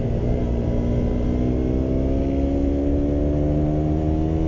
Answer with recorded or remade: recorded